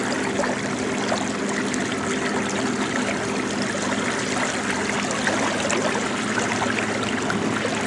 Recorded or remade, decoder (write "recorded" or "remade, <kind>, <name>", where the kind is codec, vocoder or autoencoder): recorded